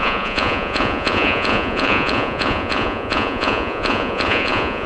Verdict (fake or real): fake